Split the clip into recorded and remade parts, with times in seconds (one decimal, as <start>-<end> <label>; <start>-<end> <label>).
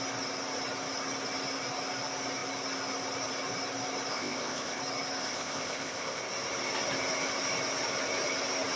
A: 0.0-4.1 recorded; 4.1-4.8 remade; 4.8-5.2 recorded; 5.2-6.2 remade; 6.2-8.8 recorded